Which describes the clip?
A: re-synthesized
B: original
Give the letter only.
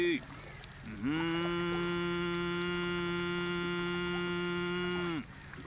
B